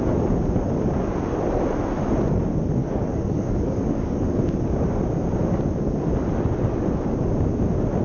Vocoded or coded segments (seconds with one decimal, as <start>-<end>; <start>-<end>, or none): 2.8-4.4